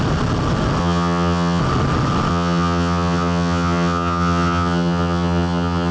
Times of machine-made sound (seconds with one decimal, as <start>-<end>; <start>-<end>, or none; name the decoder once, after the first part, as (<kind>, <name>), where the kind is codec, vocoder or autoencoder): 0.8-1.6 (vocoder, HiFi-GAN); 2.3-5.9